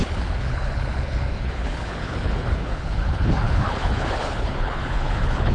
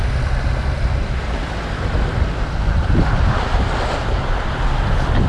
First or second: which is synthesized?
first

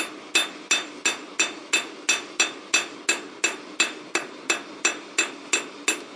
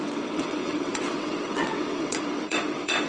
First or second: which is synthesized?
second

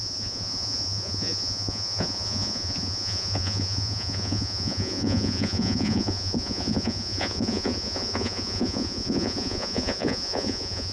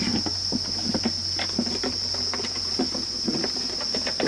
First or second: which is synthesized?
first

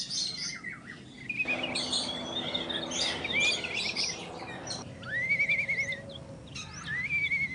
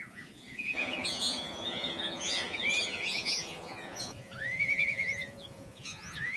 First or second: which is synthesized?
second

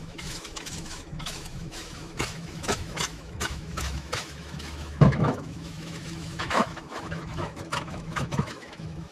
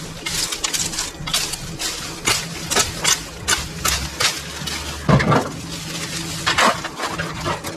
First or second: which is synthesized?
first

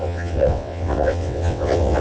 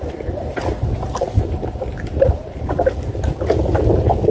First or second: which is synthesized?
first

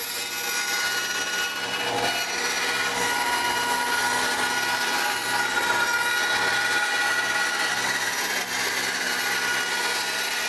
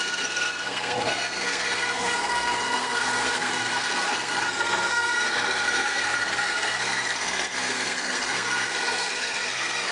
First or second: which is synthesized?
second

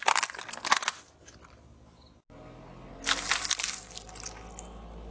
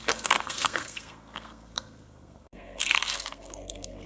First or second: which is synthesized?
second